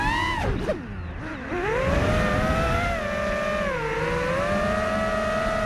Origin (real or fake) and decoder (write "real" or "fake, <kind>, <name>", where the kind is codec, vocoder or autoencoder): real